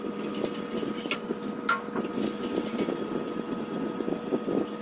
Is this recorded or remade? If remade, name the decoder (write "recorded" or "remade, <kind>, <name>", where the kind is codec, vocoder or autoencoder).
recorded